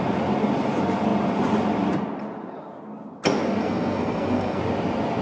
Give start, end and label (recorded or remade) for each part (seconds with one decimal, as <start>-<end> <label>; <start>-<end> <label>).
0.0-3.6 recorded; 3.6-4.6 remade; 4.6-5.2 recorded